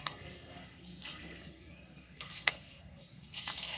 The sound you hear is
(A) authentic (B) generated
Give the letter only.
B